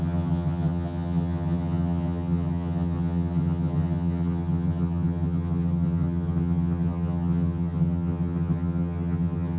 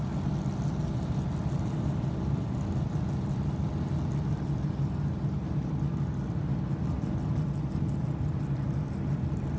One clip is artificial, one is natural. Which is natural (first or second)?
second